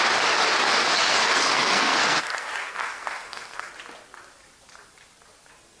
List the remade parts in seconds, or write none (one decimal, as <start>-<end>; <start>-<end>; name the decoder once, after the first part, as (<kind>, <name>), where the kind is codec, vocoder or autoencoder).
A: 1.1-3.7 (codec, SNAC)